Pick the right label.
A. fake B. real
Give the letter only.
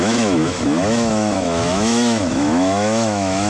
A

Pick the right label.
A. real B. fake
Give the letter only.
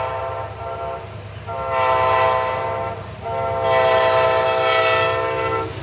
A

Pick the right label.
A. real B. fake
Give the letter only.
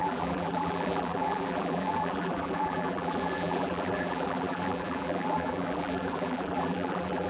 B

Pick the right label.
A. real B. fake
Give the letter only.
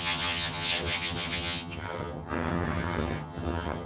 B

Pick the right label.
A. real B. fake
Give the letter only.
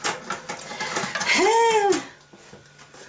A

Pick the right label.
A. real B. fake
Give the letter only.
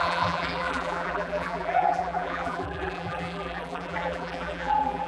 B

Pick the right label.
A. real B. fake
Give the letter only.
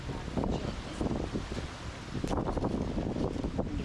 A